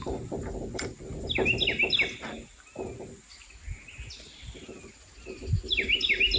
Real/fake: real